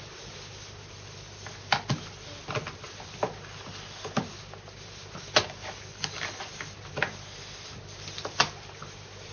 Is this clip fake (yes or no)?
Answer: no